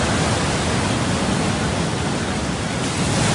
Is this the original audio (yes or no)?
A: yes